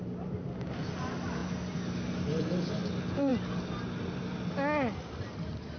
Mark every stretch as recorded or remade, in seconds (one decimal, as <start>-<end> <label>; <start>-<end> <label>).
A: 0.0-5.8 recorded